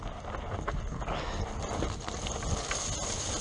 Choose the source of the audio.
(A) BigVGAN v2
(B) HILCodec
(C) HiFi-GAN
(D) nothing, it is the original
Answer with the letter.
D